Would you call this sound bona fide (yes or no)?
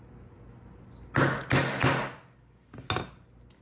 yes